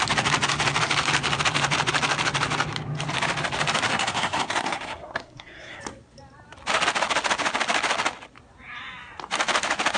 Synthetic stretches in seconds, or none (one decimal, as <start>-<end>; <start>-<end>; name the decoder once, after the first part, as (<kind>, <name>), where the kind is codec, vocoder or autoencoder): 3.9-5.8 (codec, SNAC)